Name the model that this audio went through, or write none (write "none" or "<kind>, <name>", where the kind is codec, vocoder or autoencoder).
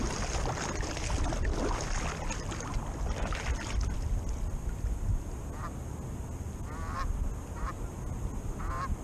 none